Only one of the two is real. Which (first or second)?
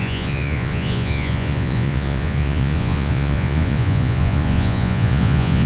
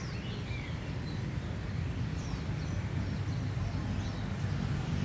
second